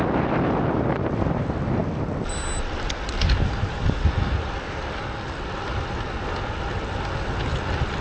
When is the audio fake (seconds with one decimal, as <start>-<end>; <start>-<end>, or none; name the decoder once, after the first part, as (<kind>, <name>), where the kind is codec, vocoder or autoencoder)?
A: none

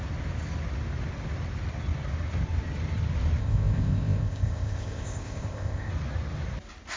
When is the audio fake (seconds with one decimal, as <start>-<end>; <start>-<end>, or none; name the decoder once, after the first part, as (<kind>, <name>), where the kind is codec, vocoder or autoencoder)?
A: 3.4-5.9 (codec, ZipCodec)

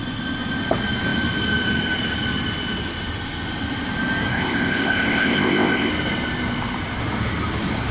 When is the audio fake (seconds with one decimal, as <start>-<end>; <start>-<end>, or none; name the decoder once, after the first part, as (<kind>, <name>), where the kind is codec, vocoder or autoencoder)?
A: 4.3-5.9 (codec, ZipCodec)

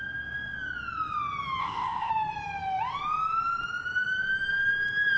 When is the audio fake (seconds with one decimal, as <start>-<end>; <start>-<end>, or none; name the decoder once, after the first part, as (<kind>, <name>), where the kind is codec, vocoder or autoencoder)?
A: 1.6-2.1 (codec, ZipCodec)

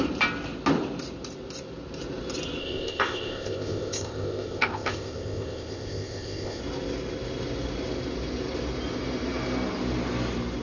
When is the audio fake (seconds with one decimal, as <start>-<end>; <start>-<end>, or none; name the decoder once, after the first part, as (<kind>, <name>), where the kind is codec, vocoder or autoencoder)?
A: 2.6-6.6 (codec, ZipCodec)